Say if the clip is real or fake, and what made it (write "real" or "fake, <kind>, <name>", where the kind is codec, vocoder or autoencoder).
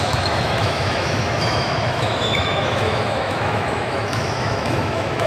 fake, autoencoder, DAC-VAE